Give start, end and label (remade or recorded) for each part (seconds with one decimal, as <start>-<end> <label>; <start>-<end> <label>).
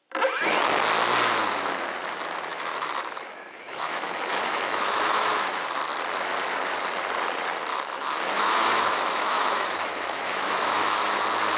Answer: 0.0-2.5 recorded; 2.5-5.8 remade; 5.8-7.7 recorded; 7.7-11.2 remade; 11.2-11.6 recorded